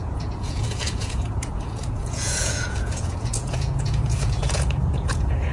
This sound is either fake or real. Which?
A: fake